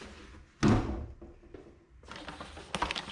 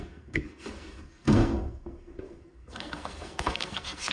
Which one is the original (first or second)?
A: first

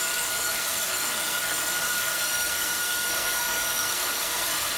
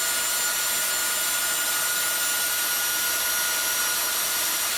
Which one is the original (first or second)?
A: second